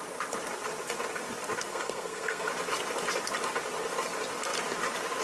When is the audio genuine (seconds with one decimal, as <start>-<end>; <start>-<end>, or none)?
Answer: 0.0-1.7; 2.5-5.2